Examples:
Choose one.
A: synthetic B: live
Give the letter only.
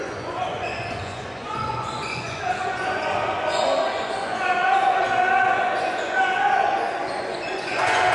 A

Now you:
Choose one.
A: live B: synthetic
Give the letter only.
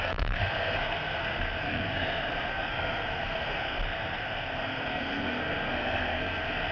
B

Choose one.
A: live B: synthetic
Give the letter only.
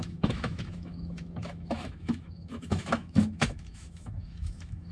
B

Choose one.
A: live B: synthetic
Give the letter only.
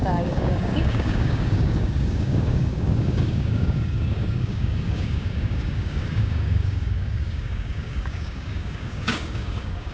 B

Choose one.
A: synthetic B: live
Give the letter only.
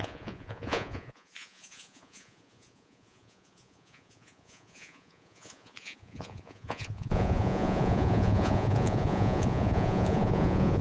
A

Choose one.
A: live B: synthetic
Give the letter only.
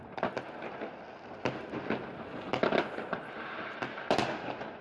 A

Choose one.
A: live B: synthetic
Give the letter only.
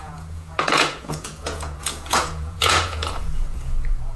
B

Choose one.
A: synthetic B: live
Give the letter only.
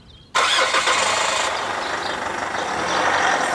B